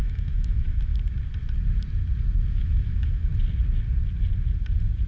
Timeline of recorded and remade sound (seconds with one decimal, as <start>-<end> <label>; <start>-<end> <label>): 0.0-0.9 remade; 0.9-2.5 recorded; 2.5-3.3 remade; 3.3-5.1 recorded

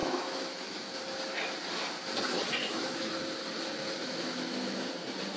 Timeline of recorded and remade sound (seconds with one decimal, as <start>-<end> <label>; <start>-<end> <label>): 0.0-1.0 remade; 1.0-2.6 recorded; 2.6-3.2 remade; 3.2-3.8 recorded; 3.8-4.9 remade; 4.9-5.4 recorded

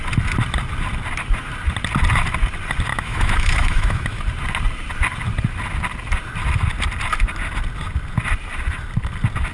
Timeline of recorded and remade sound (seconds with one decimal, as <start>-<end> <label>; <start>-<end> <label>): 0.0-2.9 recorded; 2.9-4.2 remade; 4.2-9.5 recorded

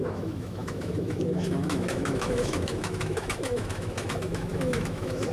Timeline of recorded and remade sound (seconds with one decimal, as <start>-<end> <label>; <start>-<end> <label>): 0.0-5.3 remade